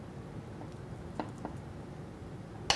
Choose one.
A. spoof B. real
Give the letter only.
B